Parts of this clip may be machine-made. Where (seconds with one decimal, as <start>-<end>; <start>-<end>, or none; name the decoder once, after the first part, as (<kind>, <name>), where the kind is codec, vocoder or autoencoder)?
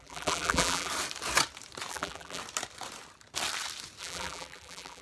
0.0-0.9 (vocoder, BigVGAN v2); 1.9-2.4; 4.0-5.0